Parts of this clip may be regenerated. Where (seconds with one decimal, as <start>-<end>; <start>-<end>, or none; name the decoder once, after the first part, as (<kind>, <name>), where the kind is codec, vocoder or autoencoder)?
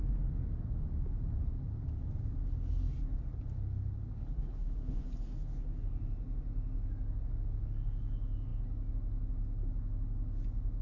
4.2-5.1 (codec, HILCodec)